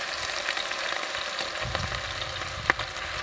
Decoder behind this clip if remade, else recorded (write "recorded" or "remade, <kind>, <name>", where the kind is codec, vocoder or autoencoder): recorded